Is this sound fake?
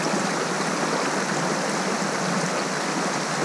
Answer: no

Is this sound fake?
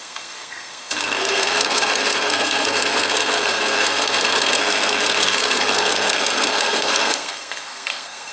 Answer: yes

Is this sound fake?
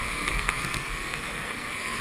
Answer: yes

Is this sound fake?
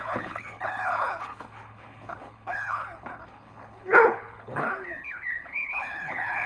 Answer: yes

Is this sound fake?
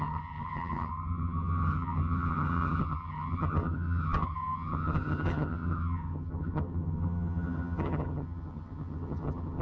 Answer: yes